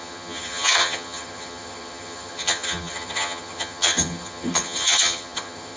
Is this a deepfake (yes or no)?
yes